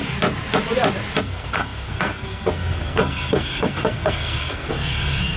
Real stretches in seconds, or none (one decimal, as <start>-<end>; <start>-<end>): 0.0-1.2